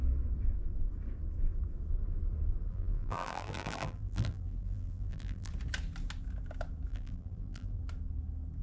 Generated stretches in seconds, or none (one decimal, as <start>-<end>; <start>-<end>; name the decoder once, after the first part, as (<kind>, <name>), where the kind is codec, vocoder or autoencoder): 2.7-5.5 (vocoder, BigVGAN v2); 6.9-7.8